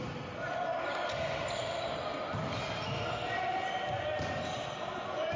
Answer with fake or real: real